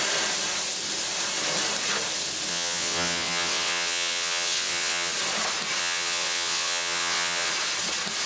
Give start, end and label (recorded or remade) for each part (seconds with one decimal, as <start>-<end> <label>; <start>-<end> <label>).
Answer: 0.0-2.5 recorded; 2.5-5.1 remade; 5.1-5.8 recorded; 5.8-7.5 remade; 7.5-8.3 recorded